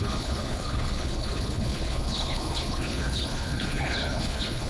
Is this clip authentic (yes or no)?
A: no